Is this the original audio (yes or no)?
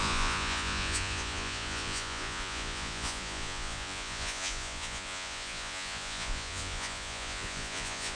no